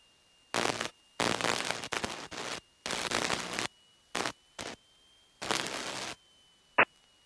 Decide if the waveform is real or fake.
real